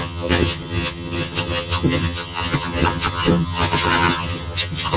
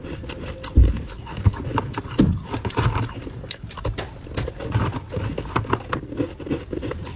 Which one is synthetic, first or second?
first